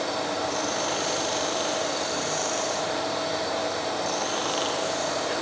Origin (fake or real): fake